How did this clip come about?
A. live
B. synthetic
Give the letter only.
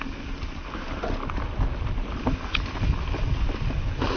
A